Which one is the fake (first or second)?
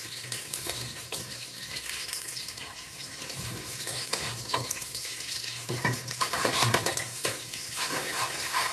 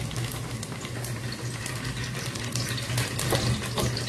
first